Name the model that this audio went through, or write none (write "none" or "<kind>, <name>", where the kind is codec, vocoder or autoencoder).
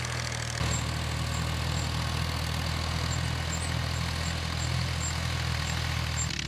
none